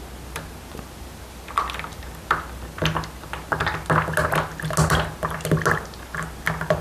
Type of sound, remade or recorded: recorded